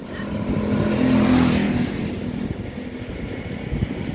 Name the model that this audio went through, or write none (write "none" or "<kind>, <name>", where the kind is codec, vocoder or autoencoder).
none